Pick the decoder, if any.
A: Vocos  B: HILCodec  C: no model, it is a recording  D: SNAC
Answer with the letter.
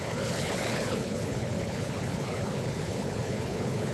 B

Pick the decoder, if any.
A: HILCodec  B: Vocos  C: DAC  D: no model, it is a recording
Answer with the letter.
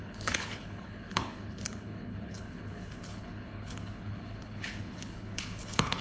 A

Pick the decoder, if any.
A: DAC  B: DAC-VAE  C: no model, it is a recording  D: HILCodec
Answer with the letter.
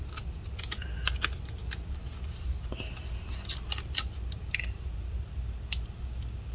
C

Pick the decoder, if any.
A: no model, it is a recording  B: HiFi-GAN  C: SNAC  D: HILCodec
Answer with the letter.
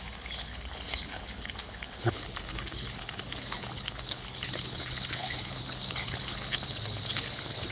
D